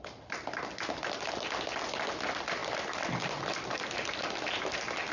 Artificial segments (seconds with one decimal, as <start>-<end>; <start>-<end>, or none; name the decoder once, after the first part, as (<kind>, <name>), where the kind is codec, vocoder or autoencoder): 2.6-3.9 (vocoder, BigVGAN v2)